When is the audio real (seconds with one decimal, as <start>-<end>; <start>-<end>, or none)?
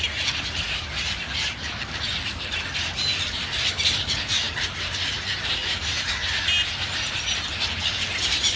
0.0-8.6